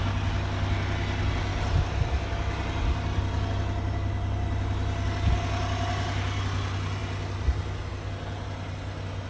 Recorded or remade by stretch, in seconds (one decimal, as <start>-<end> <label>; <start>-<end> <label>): 0.0-9.3 recorded